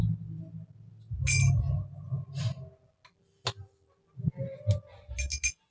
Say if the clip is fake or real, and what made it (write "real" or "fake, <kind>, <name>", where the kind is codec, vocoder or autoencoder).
real